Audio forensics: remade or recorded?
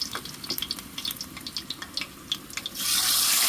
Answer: recorded